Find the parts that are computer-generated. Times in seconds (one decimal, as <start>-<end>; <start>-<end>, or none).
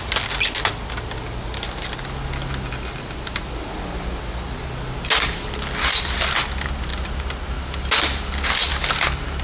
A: none